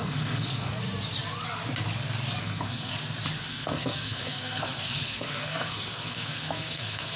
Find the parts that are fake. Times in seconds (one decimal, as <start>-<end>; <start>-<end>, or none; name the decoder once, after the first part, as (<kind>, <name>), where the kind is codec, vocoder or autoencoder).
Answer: 0.0-0.8 (codec, SNAC); 2.4-2.9; 3.5-7.2